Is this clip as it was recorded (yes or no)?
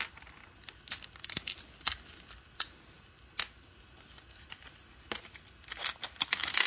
yes